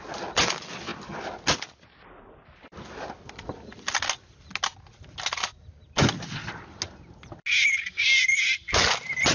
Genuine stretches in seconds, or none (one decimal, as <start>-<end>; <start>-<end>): 0.0-9.3